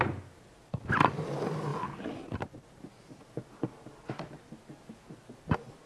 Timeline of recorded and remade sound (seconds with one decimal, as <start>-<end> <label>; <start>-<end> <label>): 0.0-5.9 recorded